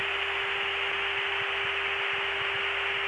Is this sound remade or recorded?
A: recorded